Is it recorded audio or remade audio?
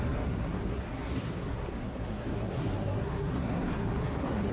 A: remade